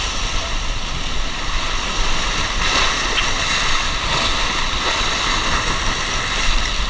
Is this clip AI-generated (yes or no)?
no